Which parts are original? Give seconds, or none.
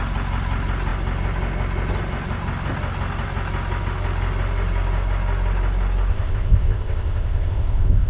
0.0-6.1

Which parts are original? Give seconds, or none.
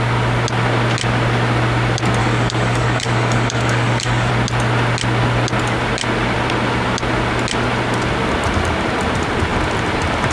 0.0-2.2; 4.3-10.3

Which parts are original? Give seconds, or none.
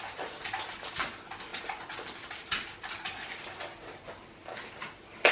0.0-5.3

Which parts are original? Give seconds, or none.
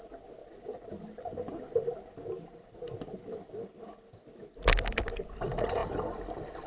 0.0-6.7